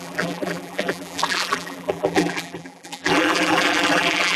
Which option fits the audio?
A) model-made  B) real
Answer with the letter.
A